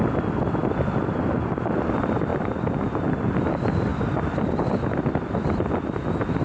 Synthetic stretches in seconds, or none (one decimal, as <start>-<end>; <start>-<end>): none

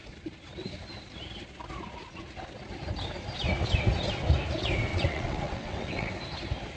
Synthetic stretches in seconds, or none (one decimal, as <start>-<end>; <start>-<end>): 4.9-6.1